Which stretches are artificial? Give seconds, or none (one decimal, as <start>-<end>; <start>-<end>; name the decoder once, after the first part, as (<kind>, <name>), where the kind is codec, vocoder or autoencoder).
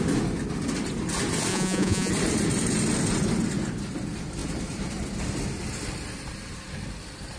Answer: 1.5-2.1 (vocoder, Vocos)